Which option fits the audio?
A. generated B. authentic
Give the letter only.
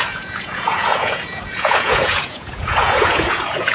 A